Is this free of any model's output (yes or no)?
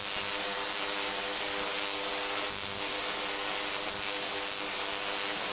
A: yes